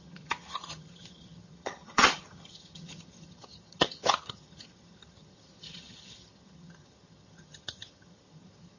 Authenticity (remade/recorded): remade